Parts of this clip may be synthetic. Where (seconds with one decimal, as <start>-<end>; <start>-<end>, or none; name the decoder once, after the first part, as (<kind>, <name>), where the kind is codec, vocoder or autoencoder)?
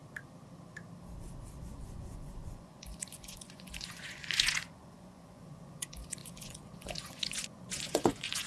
1.6-8.5 (vocoder, Vocos)